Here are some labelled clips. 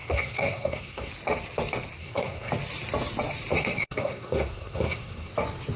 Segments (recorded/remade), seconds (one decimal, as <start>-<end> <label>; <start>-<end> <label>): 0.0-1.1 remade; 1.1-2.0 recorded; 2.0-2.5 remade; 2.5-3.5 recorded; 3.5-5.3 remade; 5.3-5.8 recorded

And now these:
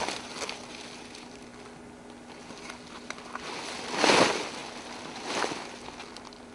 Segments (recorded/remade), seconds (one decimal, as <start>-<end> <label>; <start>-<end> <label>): 0.0-6.5 recorded

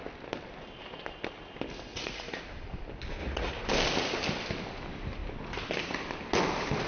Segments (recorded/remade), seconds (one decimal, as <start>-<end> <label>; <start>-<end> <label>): 0.0-1.9 recorded; 1.9-2.4 remade; 2.4-3.2 recorded; 3.2-3.7 remade; 3.7-6.9 recorded